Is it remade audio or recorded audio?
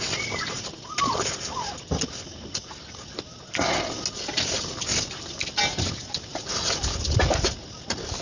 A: recorded